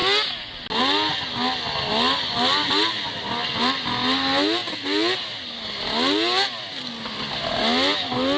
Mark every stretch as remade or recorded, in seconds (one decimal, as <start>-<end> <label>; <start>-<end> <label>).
0.0-4.6 recorded; 4.6-6.9 remade; 6.9-8.4 recorded

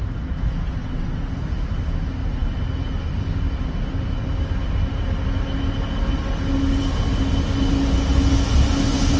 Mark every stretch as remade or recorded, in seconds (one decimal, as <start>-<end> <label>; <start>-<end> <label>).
0.0-0.8 recorded; 0.8-1.3 remade; 1.3-9.2 recorded

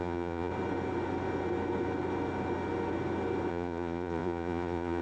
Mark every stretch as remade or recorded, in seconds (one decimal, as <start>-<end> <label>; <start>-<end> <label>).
0.0-0.5 remade; 0.5-3.5 recorded; 3.5-5.0 remade

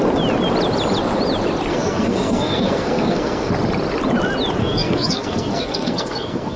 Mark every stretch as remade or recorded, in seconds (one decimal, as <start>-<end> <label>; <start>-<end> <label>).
0.0-1.7 recorded; 1.7-3.5 remade; 3.5-4.6 recorded; 4.6-6.6 remade